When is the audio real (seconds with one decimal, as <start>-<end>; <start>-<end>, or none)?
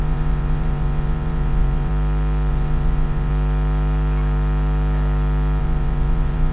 1.9-2.5; 3.3-5.6